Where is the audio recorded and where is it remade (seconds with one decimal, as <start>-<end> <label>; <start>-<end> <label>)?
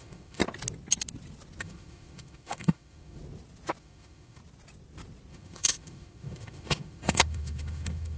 0.0-0.4 remade; 0.4-1.6 recorded; 1.6-3.2 remade; 3.2-3.8 recorded; 3.8-4.4 remade; 4.4-5.3 recorded; 5.3-8.2 remade